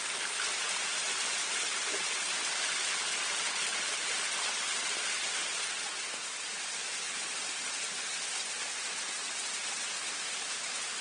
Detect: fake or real real